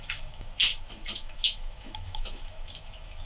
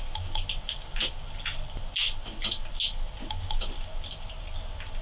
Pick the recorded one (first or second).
second